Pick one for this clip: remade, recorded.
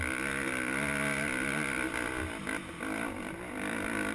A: recorded